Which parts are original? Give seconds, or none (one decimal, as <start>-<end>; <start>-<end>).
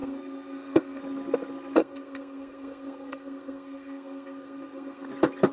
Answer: 1.0-1.8; 5.1-5.5